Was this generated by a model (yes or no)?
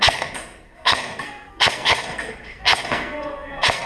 yes